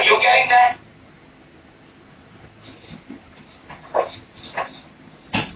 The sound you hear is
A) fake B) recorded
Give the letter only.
B